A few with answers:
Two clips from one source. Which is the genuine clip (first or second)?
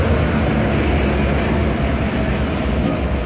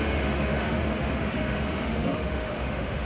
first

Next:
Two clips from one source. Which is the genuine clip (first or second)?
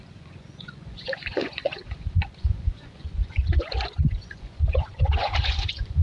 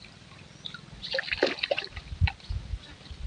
second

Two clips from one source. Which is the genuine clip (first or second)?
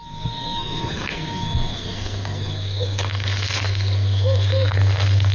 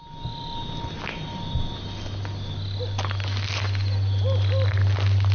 second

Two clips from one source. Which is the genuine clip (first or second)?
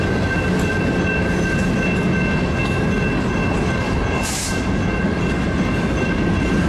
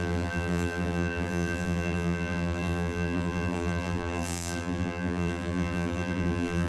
first